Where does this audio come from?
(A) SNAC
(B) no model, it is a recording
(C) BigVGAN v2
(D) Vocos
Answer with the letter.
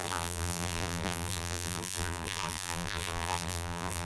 C